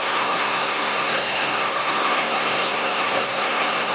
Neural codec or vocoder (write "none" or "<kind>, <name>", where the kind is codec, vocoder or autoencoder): codec, SNAC